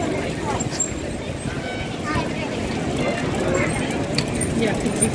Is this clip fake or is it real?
real